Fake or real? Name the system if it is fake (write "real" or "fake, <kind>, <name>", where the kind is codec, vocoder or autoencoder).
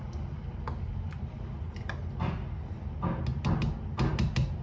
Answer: real